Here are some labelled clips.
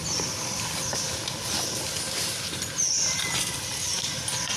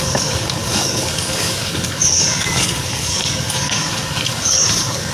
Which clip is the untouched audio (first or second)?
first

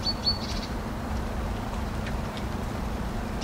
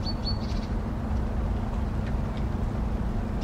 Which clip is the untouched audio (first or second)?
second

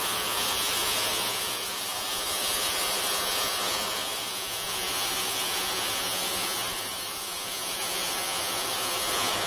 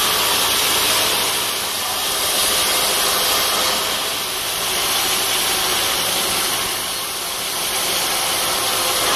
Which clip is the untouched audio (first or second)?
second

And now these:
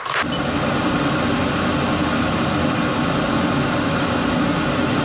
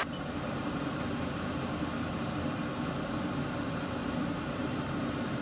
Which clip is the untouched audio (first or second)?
first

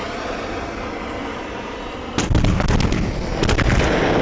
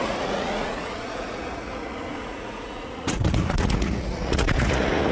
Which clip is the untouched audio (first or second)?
first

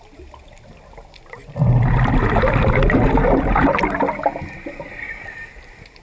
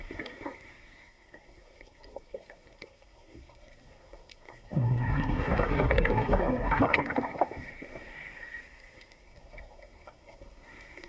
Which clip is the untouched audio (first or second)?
first